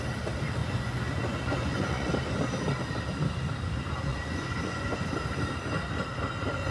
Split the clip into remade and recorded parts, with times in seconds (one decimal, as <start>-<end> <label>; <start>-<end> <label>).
0.0-0.6 recorded; 0.6-2.1 remade; 2.1-4.1 recorded; 4.1-5.0 remade; 5.0-6.7 recorded